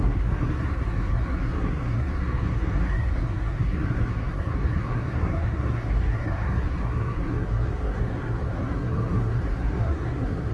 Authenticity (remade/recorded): remade